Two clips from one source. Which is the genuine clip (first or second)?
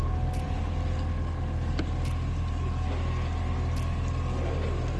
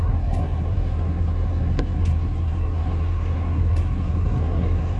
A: first